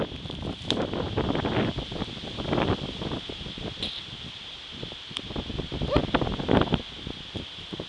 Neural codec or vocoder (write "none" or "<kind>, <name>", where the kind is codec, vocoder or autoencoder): none